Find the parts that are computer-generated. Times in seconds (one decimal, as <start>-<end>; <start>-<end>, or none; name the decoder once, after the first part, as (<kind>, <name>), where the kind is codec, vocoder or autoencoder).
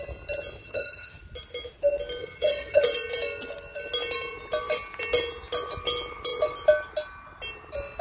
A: 0.6-1.2 (vocoder, HiFi-GAN); 2.2-2.8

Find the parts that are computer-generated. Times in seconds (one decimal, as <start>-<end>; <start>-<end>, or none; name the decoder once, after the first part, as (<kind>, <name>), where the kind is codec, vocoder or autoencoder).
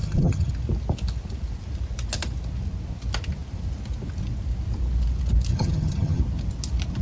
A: 0.0-0.5 (vocoder, HiFi-GAN); 5.5-6.2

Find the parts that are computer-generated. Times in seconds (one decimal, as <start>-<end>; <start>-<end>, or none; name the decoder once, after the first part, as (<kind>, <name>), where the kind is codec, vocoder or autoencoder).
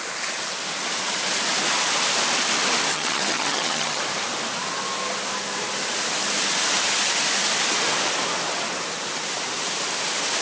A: 2.9-4.0 (vocoder, HiFi-GAN)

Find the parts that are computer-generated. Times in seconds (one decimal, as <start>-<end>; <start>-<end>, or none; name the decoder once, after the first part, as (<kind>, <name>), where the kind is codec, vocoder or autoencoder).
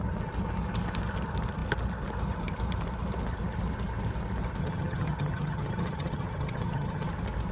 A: 4.6-7.1 (vocoder, HiFi-GAN)